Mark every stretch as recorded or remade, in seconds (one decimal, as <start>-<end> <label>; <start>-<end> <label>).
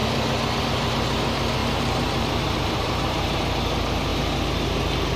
0.0-1.6 recorded; 1.6-3.4 remade; 3.4-5.2 recorded